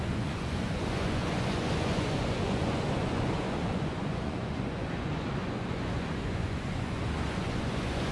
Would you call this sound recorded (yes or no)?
no